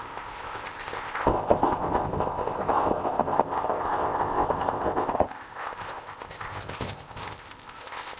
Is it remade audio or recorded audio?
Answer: remade